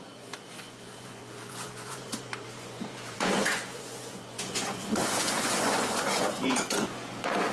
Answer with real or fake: fake